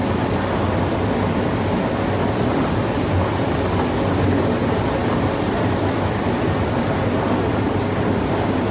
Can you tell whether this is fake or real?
real